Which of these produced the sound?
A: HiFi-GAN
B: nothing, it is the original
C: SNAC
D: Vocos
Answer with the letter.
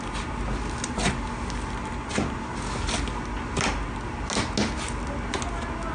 B